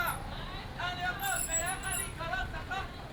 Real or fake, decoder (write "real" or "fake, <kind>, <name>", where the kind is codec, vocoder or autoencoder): real